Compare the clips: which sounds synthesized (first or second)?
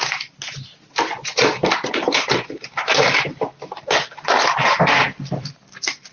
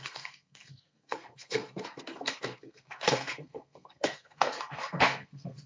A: second